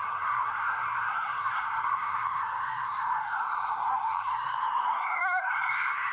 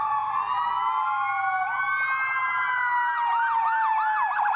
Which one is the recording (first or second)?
second